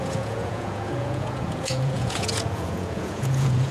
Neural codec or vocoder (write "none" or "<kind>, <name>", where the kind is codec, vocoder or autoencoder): vocoder, Vocos